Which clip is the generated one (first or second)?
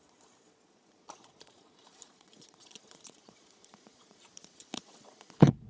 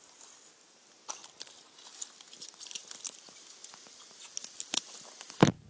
first